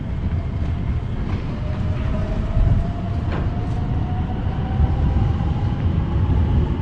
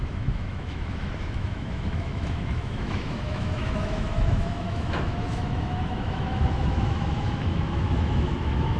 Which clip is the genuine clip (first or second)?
first